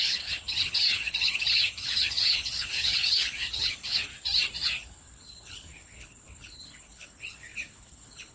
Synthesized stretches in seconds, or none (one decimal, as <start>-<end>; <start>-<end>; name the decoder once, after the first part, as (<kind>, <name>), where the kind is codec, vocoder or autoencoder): 0.0-4.1 (codec, HILCodec); 4.8-8.3

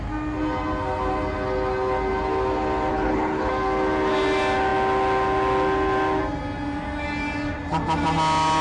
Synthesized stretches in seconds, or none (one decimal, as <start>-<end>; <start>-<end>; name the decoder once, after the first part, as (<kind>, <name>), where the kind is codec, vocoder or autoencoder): 2.9-3.5 (codec, HILCodec)

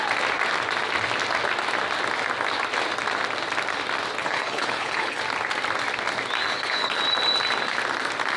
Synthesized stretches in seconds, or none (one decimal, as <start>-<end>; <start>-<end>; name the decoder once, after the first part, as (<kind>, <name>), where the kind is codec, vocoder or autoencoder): 4.2-5.2 (codec, HILCodec); 6.5-7.0

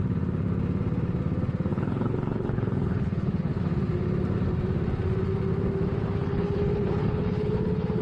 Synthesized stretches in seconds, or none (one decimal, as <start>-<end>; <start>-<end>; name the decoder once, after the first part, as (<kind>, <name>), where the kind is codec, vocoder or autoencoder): 1.7-3.6 (codec, HILCodec); 6.2-8.0